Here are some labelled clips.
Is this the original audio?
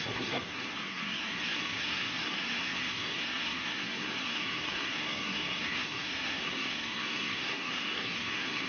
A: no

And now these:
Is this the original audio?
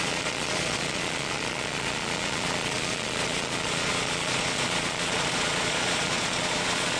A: no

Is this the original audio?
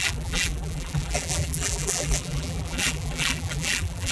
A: no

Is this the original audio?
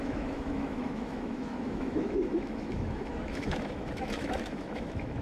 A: no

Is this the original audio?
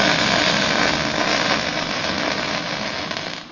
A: yes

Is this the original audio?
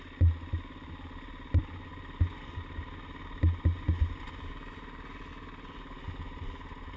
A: yes